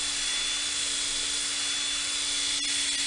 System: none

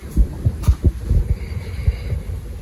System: vocoder, BigVGAN v2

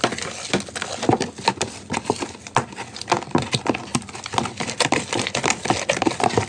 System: none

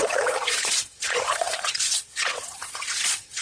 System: vocoder, Vocos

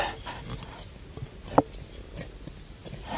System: none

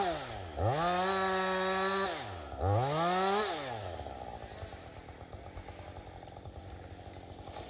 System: none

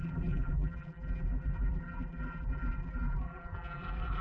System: vocoder, BigVGAN v2